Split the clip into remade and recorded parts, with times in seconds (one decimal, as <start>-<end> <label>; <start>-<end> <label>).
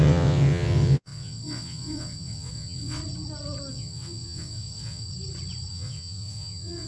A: 0.0-3.0 remade; 3.0-3.7 recorded; 3.7-5.1 remade; 5.1-5.7 recorded; 5.7-6.9 remade